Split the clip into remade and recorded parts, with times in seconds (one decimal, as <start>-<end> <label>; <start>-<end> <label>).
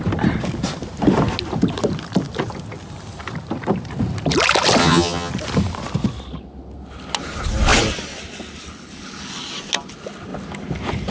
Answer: 0.0-4.8 recorded; 4.8-5.3 remade; 5.3-11.1 recorded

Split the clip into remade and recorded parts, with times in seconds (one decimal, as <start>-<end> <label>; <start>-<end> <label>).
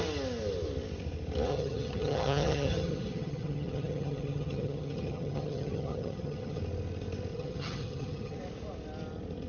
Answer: 0.0-1.5 recorded; 1.5-6.6 remade; 6.6-7.3 recorded; 7.3-8.4 remade; 8.4-9.5 recorded